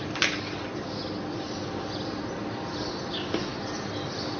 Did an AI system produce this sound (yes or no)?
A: no